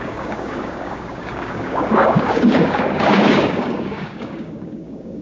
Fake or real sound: fake